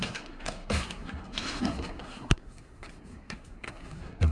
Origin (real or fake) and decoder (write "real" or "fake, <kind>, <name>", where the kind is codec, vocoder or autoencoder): fake, codec, SNAC